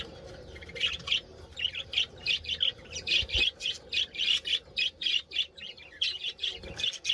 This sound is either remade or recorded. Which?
recorded